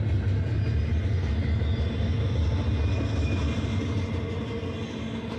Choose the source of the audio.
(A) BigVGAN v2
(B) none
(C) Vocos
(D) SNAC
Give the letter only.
B